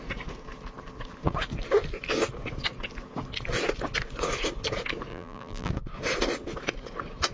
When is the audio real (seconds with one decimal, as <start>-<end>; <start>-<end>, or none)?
0.0-5.1; 5.7-7.3